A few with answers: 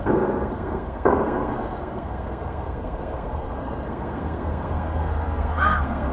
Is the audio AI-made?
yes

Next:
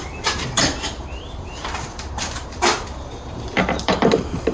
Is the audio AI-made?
yes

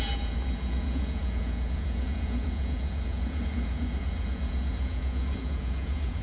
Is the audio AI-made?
yes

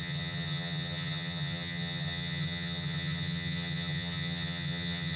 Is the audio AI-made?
yes